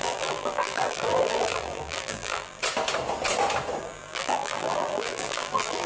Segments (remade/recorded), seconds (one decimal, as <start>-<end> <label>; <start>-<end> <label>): 0.0-2.6 remade; 2.6-3.8 recorded; 3.8-5.9 remade